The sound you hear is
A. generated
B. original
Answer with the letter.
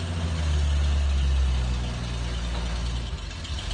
B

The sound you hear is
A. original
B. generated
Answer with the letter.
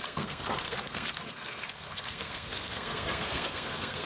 B